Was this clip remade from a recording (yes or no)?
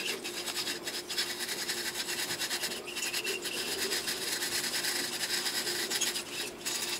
no